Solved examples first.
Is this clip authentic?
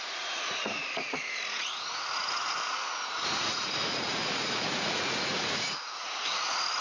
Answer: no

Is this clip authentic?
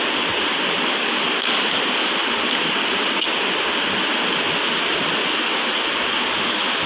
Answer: yes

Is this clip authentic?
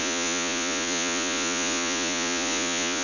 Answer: no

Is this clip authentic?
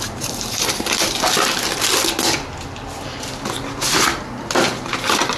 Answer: yes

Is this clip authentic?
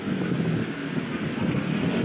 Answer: yes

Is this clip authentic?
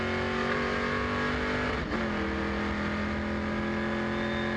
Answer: yes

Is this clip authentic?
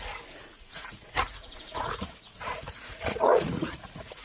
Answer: no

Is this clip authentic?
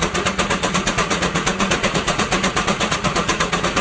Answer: no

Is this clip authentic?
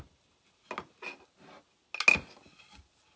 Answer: yes